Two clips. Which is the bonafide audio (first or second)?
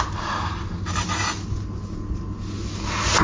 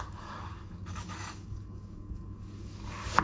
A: first